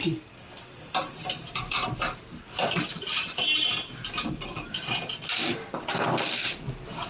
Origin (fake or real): real